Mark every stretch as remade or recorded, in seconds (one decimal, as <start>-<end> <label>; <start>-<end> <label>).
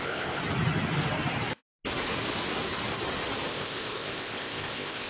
0.0-0.4 remade; 0.4-3.5 recorded; 3.5-5.1 remade